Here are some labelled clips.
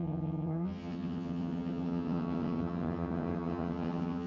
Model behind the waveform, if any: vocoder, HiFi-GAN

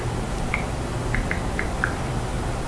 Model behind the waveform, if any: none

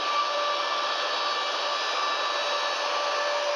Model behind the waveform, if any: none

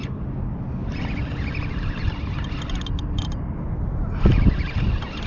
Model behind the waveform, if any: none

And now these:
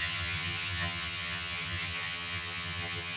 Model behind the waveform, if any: vocoder, HiFi-GAN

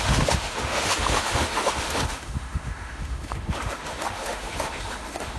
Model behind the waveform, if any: autoencoder, DAC-VAE